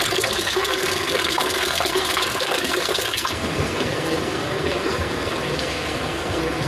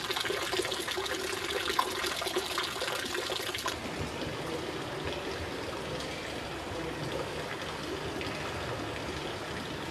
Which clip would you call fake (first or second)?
first